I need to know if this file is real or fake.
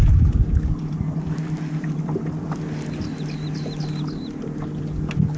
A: real